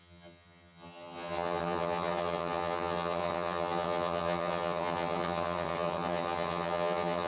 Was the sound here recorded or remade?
remade